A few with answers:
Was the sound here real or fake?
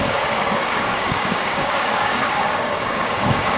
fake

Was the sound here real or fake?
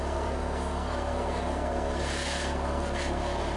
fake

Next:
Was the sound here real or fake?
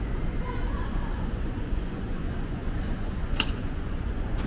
fake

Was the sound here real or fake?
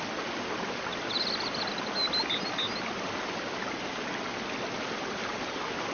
real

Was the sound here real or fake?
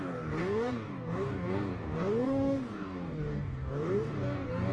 fake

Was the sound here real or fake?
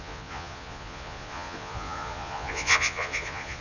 fake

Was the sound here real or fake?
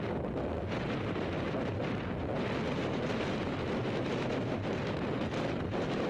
fake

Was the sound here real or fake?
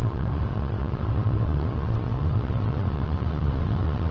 fake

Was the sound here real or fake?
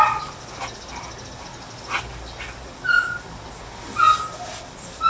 real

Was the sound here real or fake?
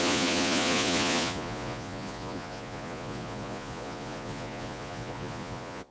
fake